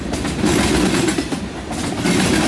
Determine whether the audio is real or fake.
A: real